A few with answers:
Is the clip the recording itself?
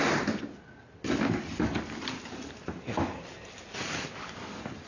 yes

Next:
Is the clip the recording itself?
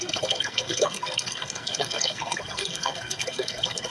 no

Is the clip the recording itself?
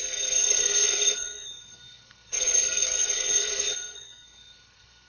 no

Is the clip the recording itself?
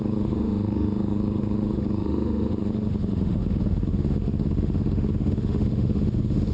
no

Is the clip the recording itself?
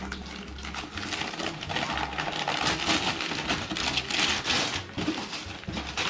yes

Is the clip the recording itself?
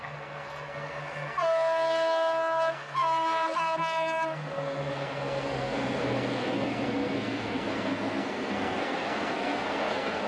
no